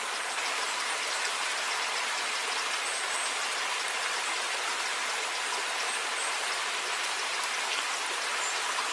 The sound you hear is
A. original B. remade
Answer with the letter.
A